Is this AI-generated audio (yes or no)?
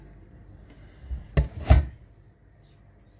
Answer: no